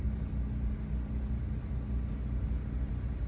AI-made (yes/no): no